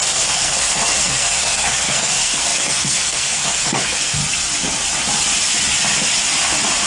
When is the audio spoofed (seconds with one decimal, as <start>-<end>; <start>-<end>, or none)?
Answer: 0.0-4.2